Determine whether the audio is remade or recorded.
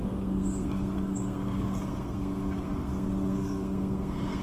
remade